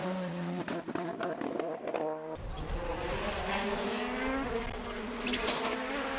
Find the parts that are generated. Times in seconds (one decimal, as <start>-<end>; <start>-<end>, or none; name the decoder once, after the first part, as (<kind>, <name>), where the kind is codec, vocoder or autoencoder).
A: 0.0-0.6 (vocoder, Vocos)